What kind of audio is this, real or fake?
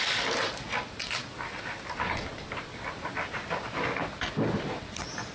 real